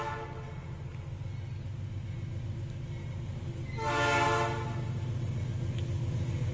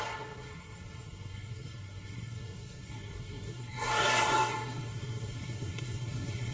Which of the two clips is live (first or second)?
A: first